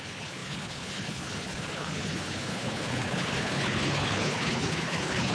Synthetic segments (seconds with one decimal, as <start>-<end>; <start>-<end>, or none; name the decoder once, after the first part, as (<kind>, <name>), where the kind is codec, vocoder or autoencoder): 0.0-5.3 (codec, HILCodec)